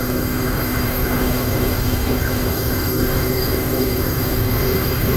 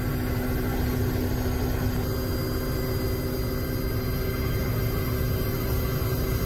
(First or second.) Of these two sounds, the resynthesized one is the first